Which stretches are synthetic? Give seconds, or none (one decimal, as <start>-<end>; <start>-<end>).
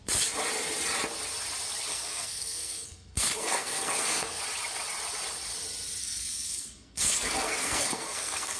1.9-4.4; 6.0-8.6